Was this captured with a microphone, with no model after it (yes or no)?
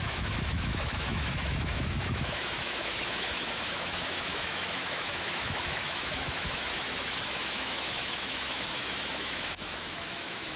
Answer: no